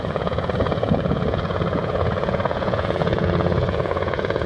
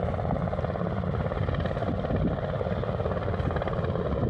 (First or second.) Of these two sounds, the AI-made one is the first